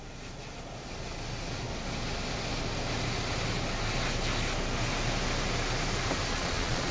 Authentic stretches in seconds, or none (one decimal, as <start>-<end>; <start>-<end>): 0.0-6.3